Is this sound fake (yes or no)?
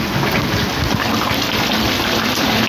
no